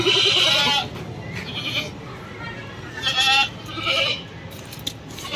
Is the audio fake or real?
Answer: real